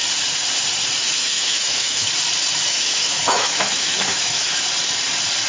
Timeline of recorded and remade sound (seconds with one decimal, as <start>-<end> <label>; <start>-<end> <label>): 0.0-1.0 recorded; 1.0-2.1 remade; 2.1-2.7 recorded; 2.7-4.5 remade; 4.5-5.5 recorded